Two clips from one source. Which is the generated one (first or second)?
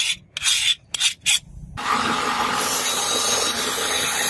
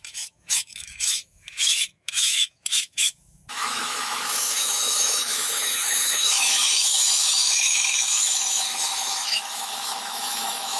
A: second